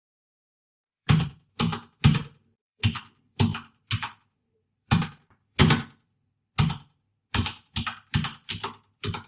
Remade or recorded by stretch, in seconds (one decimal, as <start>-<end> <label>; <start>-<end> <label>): 0.0-5.6 remade; 5.6-7.3 recorded; 7.3-9.3 remade